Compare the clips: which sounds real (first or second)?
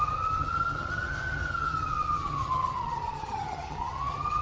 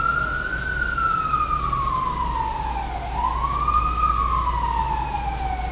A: second